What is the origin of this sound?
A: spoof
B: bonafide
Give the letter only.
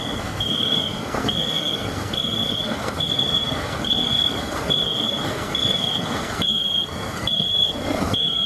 A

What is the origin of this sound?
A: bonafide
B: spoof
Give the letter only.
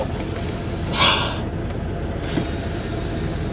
A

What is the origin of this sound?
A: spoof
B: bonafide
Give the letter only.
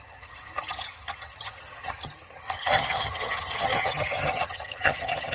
A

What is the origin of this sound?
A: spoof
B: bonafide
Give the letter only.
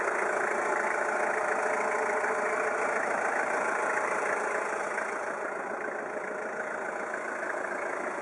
B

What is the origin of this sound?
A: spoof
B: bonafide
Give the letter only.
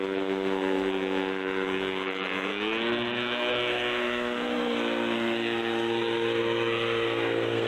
A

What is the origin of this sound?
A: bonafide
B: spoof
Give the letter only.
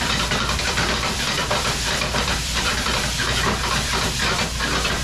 B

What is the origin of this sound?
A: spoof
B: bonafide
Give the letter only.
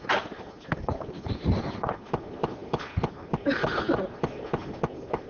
B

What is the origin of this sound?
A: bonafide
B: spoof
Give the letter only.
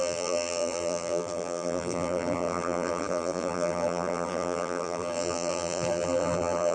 B